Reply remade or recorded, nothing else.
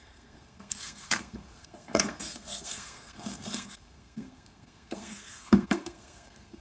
remade